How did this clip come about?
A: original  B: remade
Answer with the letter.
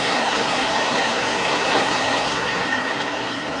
B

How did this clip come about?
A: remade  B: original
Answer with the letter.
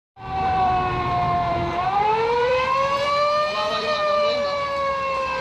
A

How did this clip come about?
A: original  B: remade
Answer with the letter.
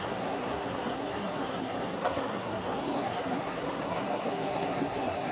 B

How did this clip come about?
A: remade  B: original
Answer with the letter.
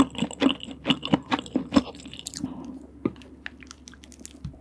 B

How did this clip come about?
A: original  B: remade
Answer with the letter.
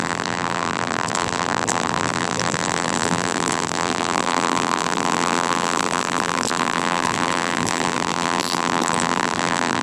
B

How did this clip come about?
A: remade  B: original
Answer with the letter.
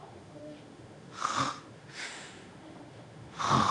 A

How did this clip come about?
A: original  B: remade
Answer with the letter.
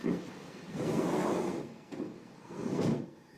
B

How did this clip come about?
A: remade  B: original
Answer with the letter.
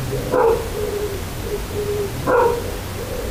B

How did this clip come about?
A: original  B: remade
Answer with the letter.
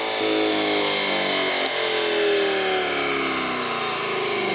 A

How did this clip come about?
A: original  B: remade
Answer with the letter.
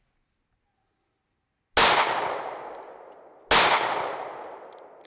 A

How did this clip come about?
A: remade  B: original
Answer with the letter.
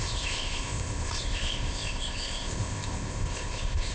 A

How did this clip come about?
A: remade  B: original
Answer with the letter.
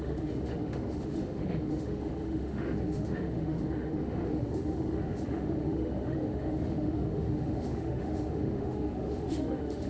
A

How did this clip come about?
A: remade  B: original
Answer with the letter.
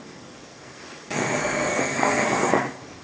A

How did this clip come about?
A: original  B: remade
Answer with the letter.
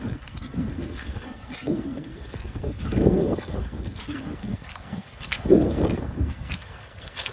B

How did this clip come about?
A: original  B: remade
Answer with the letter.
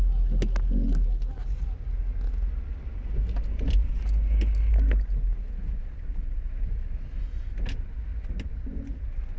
A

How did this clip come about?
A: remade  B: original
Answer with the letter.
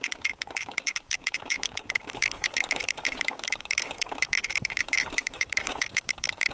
A